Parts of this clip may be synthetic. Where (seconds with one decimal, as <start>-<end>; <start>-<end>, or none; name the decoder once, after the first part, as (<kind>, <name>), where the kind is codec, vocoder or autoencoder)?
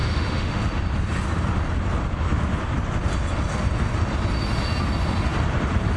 0.0-0.8 (autoencoder, DAC-VAE)